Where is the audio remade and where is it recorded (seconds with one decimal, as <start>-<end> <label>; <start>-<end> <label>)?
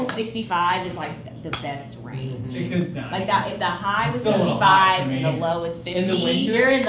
0.0-1.8 remade; 1.8-5.5 recorded; 5.5-6.9 remade